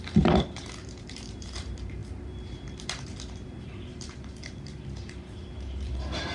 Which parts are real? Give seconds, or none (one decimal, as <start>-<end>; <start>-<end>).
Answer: none